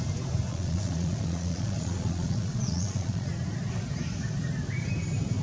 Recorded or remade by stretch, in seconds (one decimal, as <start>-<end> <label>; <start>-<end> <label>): 0.0-0.5 recorded; 0.5-3.3 remade; 3.3-5.4 recorded